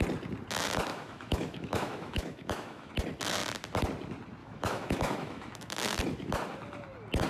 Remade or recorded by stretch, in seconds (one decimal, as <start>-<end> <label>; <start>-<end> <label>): 0.0-0.9 recorded; 0.9-2.9 remade; 2.9-4.4 recorded; 4.4-6.0 remade; 6.0-7.3 recorded